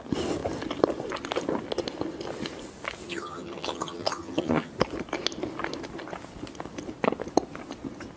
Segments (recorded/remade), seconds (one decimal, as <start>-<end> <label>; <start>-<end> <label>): 0.0-3.1 recorded; 3.1-4.7 remade; 4.7-8.2 recorded